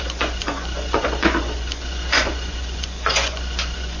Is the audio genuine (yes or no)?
no